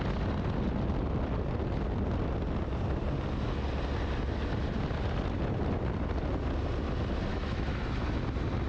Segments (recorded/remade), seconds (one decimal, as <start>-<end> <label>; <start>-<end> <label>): 0.0-7.3 recorded; 7.3-7.8 remade; 7.8-8.7 recorded

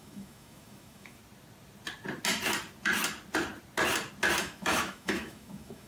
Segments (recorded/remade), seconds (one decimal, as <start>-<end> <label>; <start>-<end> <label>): 0.0-1.2 remade; 1.2-4.4 recorded; 4.4-5.9 remade

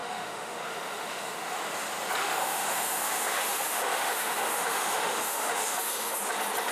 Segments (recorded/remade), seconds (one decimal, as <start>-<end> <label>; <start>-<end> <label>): 0.0-1.6 remade; 1.6-2.2 recorded; 2.2-6.2 remade; 6.2-6.7 recorded

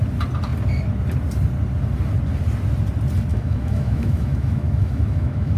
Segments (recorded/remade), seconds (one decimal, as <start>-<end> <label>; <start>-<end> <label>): 0.0-3.3 recorded; 3.3-5.6 remade

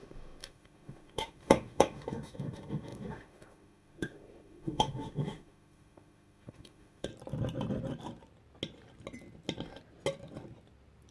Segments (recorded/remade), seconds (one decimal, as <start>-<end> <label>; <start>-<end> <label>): 0.0-7.1 remade; 7.1-11.1 recorded

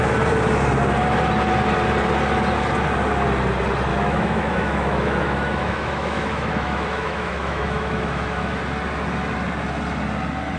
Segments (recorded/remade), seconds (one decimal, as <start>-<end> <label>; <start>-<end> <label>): 0.0-3.9 recorded; 3.9-8.6 remade; 8.6-10.6 recorded

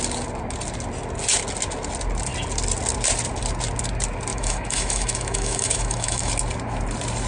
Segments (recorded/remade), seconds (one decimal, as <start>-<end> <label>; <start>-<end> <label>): 0.0-4.3 recorded; 4.3-6.3 remade; 6.3-7.3 recorded

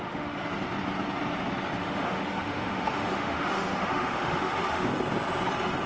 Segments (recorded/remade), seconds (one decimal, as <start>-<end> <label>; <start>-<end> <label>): 0.0-0.4 remade; 0.4-1.8 recorded; 1.8-4.9 remade; 4.9-5.9 recorded